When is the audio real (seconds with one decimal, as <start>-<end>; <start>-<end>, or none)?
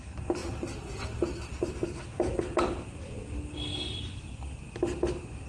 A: 3.2-5.1